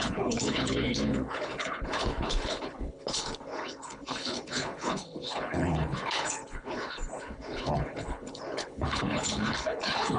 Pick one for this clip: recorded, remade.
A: remade